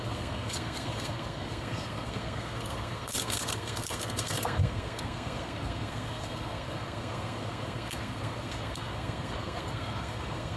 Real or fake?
fake